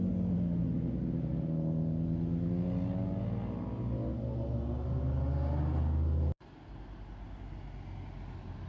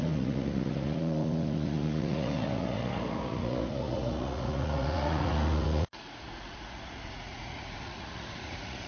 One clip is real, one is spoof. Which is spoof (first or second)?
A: second